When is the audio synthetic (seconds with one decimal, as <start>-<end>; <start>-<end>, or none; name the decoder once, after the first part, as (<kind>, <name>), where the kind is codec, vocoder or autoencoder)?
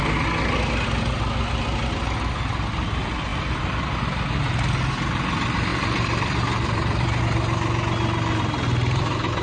3.3-3.9 (vocoder, BigVGAN v2); 5.7-7.2